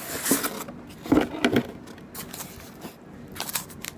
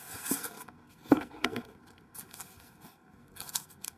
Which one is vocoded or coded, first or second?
second